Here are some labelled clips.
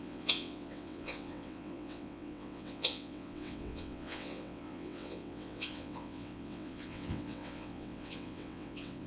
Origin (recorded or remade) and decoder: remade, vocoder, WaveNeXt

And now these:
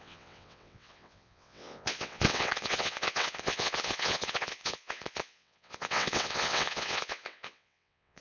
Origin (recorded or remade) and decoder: remade, vocoder, WaveNeXt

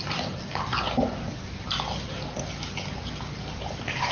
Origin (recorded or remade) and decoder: recorded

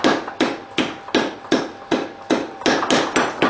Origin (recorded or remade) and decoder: recorded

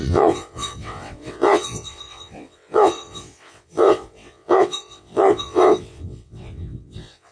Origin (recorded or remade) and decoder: remade, vocoder, WaveNeXt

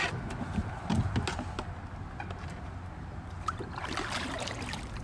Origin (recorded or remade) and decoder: recorded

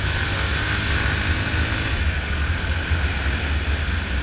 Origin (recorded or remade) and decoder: recorded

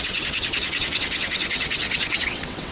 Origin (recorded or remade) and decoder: remade, vocoder, WaveNeXt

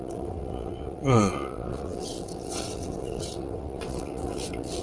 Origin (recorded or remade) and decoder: remade, vocoder, WaveNeXt